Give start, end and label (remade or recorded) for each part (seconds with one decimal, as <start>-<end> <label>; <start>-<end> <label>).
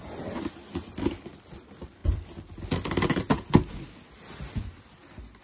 0.0-5.4 recorded